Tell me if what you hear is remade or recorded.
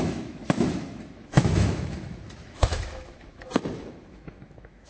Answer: remade